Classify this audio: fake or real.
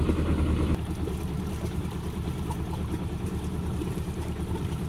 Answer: fake